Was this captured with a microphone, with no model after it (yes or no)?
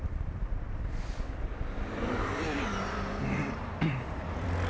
no